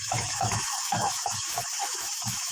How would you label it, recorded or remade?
remade